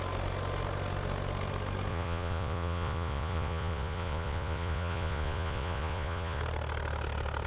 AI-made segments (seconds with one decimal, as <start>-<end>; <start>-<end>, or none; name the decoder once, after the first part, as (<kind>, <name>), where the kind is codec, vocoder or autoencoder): 1.9-6.4 (vocoder, Vocos)